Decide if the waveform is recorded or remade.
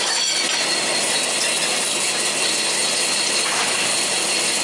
recorded